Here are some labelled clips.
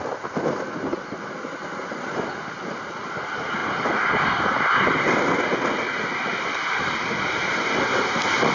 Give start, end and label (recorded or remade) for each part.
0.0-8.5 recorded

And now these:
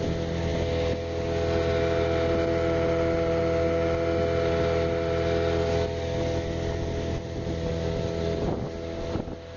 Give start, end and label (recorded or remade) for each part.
0.0-9.6 recorded

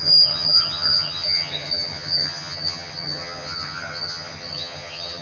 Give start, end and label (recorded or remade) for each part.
0.0-5.2 remade

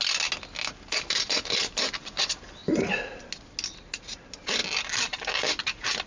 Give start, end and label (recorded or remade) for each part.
0.0-6.1 recorded

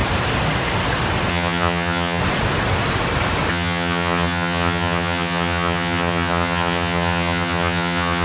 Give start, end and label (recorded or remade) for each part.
0.0-1.3 recorded; 1.3-2.2 remade; 2.2-3.5 recorded; 3.5-8.2 remade

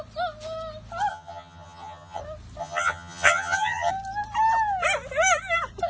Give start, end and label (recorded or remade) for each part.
0.0-1.1 recorded; 1.1-2.2 remade; 2.2-2.6 recorded; 2.6-3.9 remade; 3.9-5.9 recorded

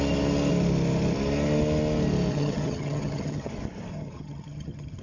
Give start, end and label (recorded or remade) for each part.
0.0-2.3 recorded; 2.3-3.5 remade; 3.5-3.9 recorded; 3.9-5.0 remade